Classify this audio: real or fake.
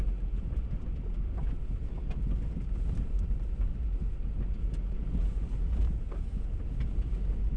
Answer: real